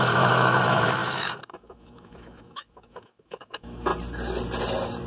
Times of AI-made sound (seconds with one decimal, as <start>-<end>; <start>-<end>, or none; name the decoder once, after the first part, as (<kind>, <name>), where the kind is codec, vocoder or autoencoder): 0.0-3.9 (autoencoder, DAC-VAE)